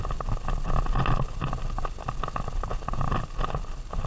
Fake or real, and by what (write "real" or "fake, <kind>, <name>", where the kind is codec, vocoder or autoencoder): real